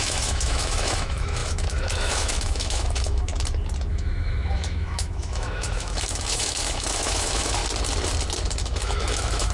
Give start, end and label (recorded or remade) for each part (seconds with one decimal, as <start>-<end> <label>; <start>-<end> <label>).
0.0-3.3 remade; 3.3-3.9 recorded; 3.9-7.6 remade; 7.6-8.6 recorded; 8.6-9.5 remade

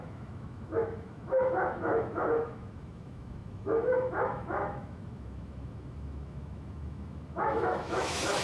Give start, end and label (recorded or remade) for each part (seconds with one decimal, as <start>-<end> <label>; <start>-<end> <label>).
0.0-8.4 remade

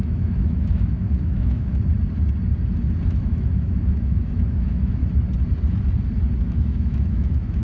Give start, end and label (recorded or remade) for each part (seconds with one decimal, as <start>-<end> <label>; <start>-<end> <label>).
0.0-1.8 remade; 1.8-3.1 recorded; 3.1-5.0 remade; 5.0-6.4 recorded; 6.4-7.6 remade

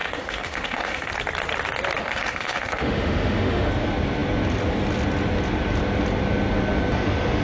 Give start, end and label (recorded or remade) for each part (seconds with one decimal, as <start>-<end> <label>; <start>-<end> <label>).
0.0-1.1 remade; 1.1-2.0 recorded; 2.0-3.7 remade; 3.7-7.4 recorded

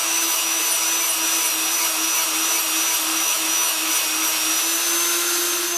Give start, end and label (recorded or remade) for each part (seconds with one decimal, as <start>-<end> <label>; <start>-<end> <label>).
0.0-0.6 remade; 0.6-3.1 recorded; 3.1-3.9 remade; 3.9-5.8 recorded

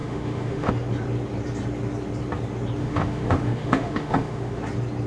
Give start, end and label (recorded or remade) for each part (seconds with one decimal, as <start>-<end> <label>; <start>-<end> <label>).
0.0-0.7 remade; 0.7-2.8 recorded; 2.8-4.6 remade; 4.6-5.1 recorded

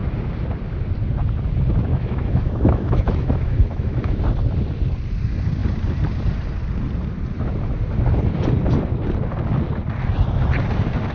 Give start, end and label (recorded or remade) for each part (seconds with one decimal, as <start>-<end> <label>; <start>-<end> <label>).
0.0-1.9 recorded; 1.9-4.2 remade; 4.2-11.1 recorded